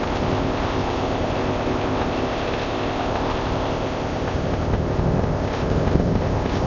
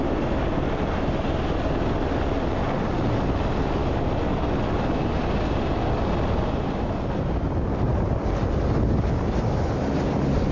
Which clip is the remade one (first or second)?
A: first